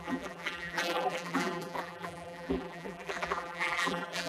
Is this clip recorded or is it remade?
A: remade